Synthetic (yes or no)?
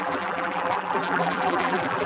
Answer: yes